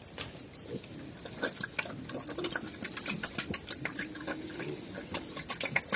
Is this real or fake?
real